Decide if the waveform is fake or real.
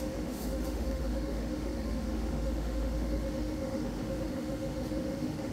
fake